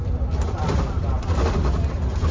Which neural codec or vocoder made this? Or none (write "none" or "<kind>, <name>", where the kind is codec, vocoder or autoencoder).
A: none